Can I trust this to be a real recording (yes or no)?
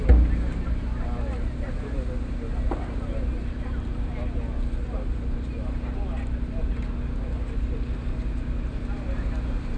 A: yes